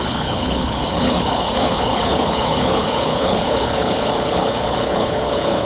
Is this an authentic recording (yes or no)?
no